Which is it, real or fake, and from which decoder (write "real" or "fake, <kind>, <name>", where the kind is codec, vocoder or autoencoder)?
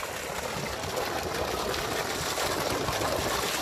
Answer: real